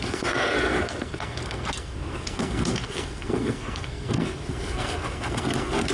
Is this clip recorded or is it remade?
remade